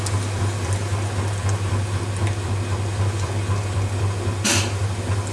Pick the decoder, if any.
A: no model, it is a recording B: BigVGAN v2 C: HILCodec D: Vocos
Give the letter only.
A